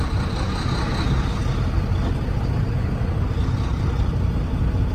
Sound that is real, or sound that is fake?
real